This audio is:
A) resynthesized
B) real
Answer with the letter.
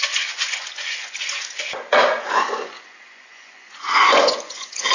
A